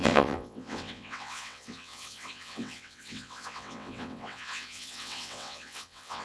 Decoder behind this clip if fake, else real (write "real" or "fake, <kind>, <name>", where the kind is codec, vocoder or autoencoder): fake, vocoder, WaveNeXt